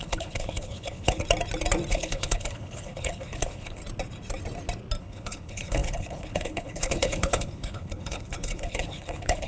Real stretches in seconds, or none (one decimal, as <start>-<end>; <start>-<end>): 1.2-1.9; 3.8-5.0

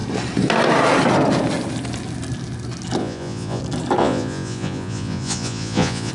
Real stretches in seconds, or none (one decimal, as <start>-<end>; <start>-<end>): 0.0-3.0; 3.6-4.0

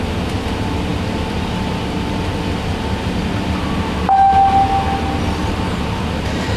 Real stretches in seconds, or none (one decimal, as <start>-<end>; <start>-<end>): 0.0-5.4

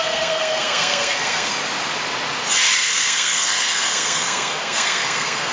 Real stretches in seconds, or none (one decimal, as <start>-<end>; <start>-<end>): 1.5-2.8

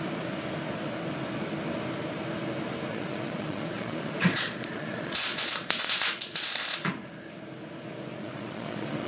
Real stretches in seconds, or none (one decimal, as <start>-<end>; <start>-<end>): 0.0-2.9; 6.9-8.1